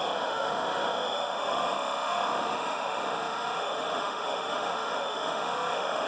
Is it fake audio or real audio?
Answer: fake